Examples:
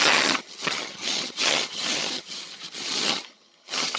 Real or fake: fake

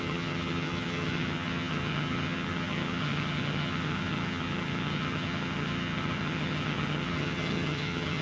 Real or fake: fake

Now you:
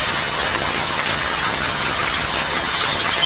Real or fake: fake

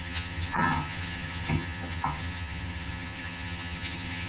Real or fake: fake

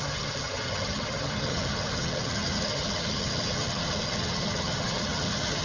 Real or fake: fake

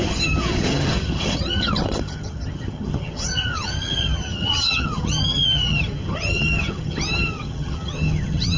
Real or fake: fake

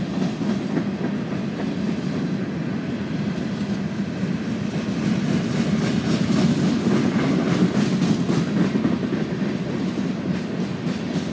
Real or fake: real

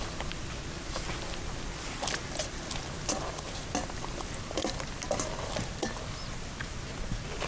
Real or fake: real